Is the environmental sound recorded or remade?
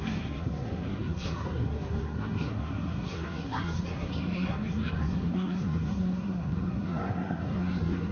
remade